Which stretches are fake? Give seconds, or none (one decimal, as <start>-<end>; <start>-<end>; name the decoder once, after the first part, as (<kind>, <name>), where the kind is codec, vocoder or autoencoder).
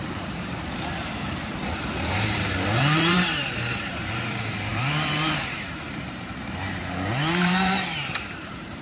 0.0-8.8 (vocoder, BigVGAN v2)